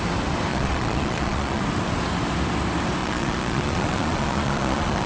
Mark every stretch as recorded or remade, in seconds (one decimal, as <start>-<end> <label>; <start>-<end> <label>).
0.0-0.5 recorded; 0.5-1.6 remade; 1.6-3.0 recorded; 3.0-5.1 remade